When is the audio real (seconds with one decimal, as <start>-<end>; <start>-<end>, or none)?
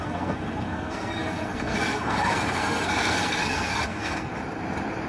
4.3-5.1